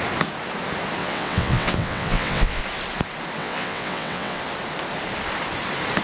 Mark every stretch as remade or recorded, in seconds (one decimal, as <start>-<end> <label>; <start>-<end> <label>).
0.0-1.0 recorded; 1.0-2.6 remade; 2.6-3.4 recorded; 3.4-4.4 remade; 4.4-6.0 recorded